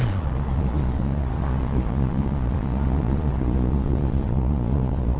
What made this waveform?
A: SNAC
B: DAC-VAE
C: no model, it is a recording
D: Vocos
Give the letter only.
D